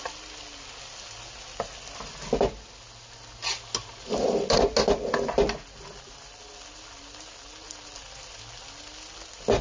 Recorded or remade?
recorded